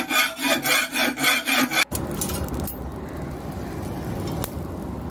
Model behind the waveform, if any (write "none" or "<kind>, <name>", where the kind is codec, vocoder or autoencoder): none